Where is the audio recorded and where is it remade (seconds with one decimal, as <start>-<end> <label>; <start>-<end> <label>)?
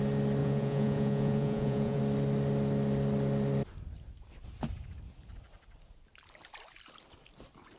0.0-0.4 recorded; 0.4-2.0 remade; 2.0-7.8 recorded